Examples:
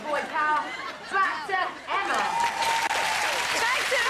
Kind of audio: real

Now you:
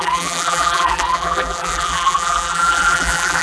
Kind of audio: fake